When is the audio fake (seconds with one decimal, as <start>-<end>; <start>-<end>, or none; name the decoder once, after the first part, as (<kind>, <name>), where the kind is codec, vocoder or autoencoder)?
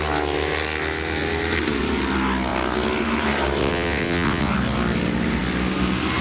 3.6-4.5 (vocoder, WaveNeXt)